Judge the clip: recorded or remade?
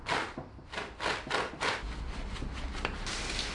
recorded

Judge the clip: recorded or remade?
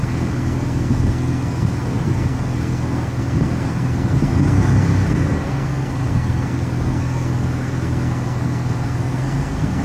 remade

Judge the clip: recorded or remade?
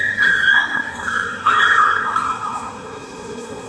remade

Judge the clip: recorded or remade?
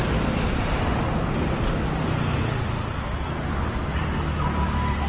recorded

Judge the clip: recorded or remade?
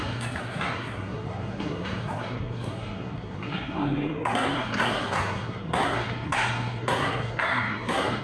remade